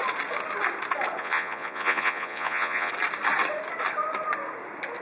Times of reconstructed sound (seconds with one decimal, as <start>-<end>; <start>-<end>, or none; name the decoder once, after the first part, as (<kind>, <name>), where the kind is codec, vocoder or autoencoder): 1.2-2.9 (vocoder, Vocos)

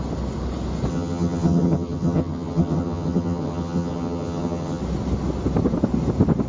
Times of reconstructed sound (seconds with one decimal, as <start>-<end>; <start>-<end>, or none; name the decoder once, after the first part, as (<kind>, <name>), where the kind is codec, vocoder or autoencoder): 0.9-4.8 (vocoder, HiFi-GAN)

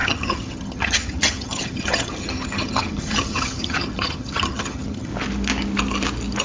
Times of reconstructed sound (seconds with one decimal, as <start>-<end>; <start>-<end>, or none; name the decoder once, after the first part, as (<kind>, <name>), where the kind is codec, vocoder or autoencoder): 0.0-5.1 (vocoder, HiFi-GAN)

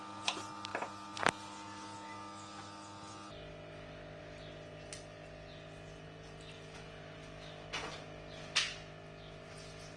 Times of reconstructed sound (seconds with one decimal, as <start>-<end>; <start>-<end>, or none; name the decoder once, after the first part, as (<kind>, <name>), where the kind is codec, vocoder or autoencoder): none

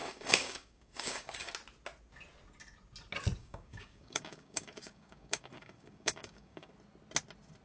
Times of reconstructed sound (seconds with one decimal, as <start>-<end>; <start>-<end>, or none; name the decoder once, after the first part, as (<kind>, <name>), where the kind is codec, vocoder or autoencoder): 0.0-1.5 (codec, DAC); 3.4-6.7

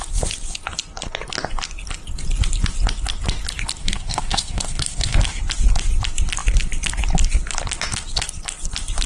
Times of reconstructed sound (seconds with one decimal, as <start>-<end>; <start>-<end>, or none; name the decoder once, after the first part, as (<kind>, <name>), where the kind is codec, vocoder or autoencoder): 3.8-5.2 (codec, SNAC)